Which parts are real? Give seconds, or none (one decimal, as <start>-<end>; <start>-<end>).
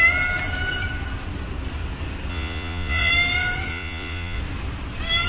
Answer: 0.0-2.3; 3.1-3.7; 4.4-5.3